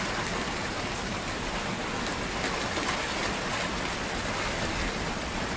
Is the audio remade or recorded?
recorded